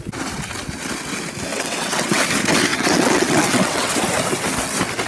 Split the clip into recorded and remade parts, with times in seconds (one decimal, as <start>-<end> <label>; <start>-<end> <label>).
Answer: 0.0-1.5 recorded; 1.5-2.2 remade; 2.2-2.7 recorded; 2.7-3.9 remade; 3.9-5.1 recorded